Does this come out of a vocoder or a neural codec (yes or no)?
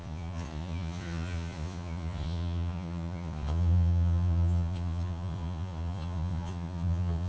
yes